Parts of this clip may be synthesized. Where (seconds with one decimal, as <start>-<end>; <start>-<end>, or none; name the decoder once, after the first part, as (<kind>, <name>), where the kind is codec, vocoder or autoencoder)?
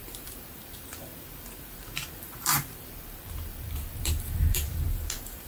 0.0-5.5 (vocoder, BigVGAN v2)